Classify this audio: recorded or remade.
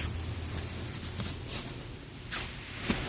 recorded